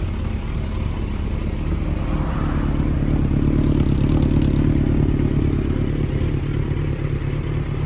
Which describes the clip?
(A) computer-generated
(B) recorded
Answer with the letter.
B